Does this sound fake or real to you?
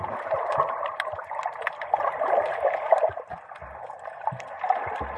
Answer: real